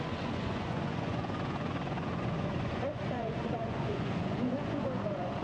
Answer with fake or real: fake